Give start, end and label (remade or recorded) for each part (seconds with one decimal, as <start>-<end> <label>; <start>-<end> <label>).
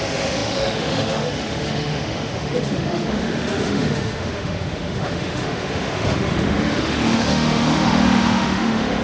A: 0.0-9.0 remade